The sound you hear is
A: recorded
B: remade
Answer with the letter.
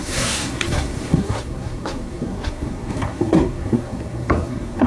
B